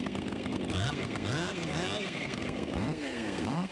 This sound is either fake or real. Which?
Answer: fake